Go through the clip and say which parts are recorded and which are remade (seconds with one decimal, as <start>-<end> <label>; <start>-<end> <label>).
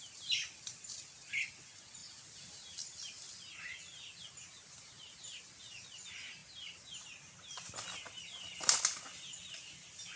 0.0-10.2 recorded